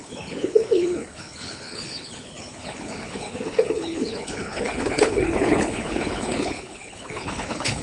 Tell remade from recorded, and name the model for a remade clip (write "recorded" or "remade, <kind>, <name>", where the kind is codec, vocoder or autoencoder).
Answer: remade, codec, HILCodec